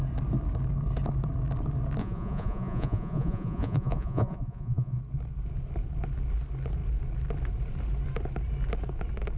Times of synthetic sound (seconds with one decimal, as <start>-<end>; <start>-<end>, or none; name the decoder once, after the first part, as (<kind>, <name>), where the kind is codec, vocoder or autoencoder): 2.0-5.0 (vocoder, Vocos)